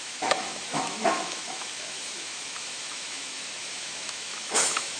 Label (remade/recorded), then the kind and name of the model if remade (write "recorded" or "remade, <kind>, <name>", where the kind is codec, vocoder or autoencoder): remade, autoencoder, DAC-VAE